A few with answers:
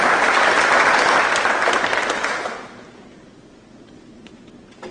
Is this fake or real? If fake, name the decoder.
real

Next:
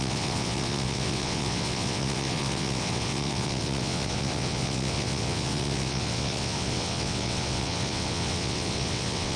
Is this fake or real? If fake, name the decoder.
fake, vocoder, WaveNeXt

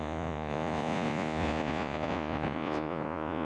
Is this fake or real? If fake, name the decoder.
fake, vocoder, Vocos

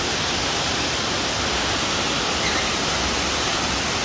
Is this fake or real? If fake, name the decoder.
real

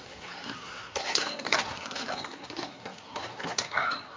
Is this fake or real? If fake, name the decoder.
fake, codec, SNAC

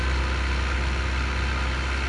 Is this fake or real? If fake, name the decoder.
real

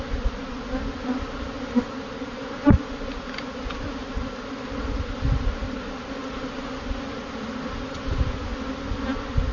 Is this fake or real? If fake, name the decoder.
real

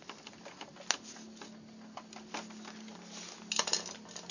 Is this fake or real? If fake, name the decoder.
real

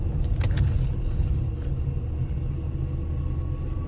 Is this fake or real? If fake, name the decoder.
real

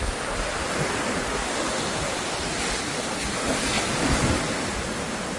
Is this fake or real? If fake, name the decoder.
real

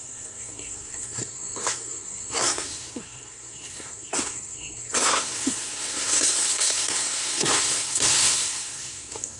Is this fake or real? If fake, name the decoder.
fake, codec, SNAC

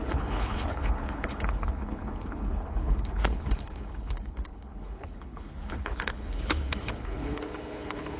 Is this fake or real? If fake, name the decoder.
fake, codec, HILCodec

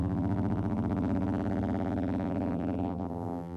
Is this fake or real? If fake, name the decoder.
fake, vocoder, BigVGAN v2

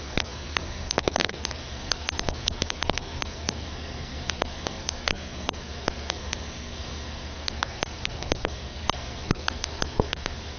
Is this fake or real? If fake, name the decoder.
fake, codec, SNAC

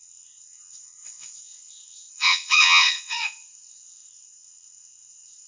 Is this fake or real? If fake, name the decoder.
fake, vocoder, WaveNeXt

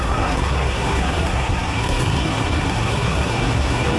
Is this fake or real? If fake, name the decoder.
fake, codec, SNAC